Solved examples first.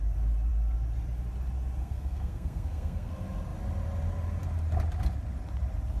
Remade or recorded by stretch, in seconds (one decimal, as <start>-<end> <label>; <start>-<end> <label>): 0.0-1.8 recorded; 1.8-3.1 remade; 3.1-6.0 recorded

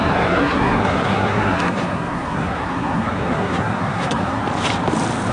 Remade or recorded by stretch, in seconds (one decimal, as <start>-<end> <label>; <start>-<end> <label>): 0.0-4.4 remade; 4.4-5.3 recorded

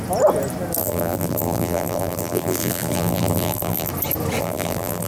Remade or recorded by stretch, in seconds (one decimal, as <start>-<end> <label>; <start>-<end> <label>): 0.0-0.8 recorded; 0.8-3.9 remade; 3.9-4.4 recorded; 4.4-5.1 remade

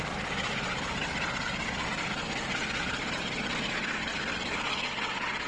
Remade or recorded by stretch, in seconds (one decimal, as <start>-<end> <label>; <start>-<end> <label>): 0.0-5.5 recorded

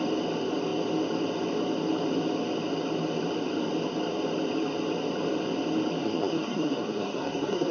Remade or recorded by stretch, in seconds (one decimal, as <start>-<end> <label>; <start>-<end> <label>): 0.0-6.0 recorded; 6.0-7.7 remade

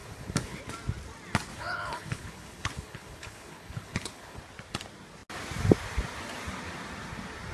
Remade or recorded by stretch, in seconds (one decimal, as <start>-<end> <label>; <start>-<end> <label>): 0.0-0.6 remade; 0.6-1.5 recorded; 1.5-4.4 remade; 4.4-7.5 recorded

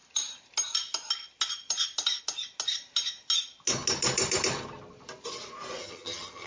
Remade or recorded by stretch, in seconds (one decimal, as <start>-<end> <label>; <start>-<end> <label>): 0.0-5.8 recorded; 5.8-6.5 remade